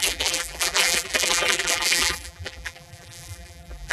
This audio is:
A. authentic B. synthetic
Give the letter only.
B